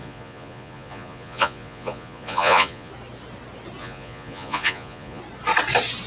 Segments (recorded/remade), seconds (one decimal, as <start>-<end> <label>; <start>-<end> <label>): 0.0-2.9 remade; 2.9-3.8 recorded; 3.8-5.2 remade; 5.2-6.1 recorded